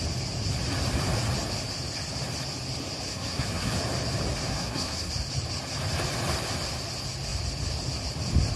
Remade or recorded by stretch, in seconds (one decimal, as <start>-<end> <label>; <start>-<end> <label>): 0.0-3.1 recorded; 3.1-3.7 remade; 3.7-4.5 recorded; 4.5-5.1 remade; 5.1-8.6 recorded